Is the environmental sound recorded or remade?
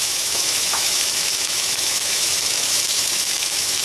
remade